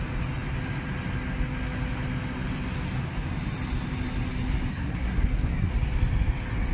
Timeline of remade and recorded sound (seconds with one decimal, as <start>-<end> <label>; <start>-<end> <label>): 0.0-4.7 recorded; 4.7-5.7 remade; 5.7-6.7 recorded